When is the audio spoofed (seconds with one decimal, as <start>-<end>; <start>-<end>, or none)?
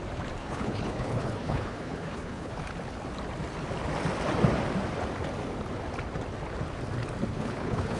0.4-2.6; 7.3-8.0